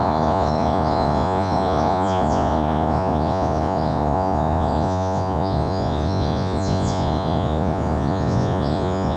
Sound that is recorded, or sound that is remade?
remade